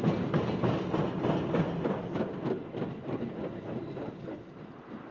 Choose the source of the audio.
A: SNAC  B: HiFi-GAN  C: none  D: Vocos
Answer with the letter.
C